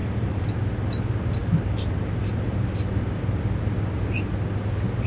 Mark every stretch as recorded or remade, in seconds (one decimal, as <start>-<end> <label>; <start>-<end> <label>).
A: 0.0-0.5 remade; 0.5-1.4 recorded; 1.4-2.0 remade; 2.0-5.1 recorded

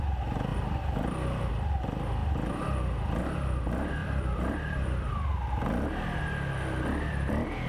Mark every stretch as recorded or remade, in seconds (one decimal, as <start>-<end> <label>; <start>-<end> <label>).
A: 0.0-0.5 recorded; 0.5-1.5 remade; 1.5-4.0 recorded; 4.0-5.1 remade; 5.1-7.7 recorded

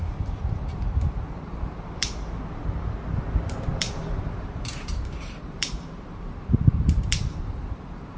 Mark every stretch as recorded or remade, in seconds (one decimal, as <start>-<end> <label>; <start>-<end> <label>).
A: 0.0-2.4 remade; 2.4-3.7 recorded; 3.7-8.2 remade

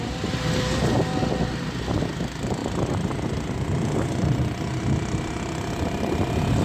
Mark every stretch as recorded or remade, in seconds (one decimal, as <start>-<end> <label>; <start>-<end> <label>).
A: 0.0-2.6 recorded; 2.6-3.3 remade; 3.3-6.6 recorded

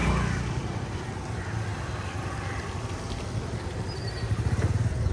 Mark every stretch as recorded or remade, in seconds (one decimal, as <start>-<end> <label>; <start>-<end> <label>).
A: 0.0-1.1 remade; 1.1-5.1 recorded

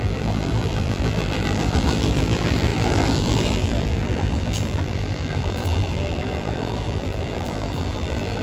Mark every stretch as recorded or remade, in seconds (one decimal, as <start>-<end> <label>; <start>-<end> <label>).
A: 0.0-8.4 remade